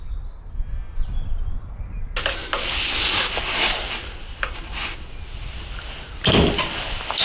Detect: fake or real real